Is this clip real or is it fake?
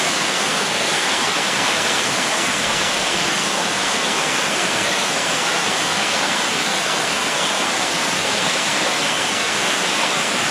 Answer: fake